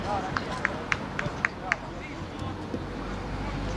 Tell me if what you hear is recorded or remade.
recorded